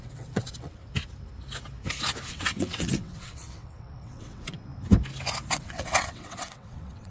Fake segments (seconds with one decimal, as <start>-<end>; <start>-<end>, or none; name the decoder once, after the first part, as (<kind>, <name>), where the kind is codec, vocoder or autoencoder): 0.0-0.8 (vocoder, WaveNeXt); 2.3-4.7; 5.5-7.1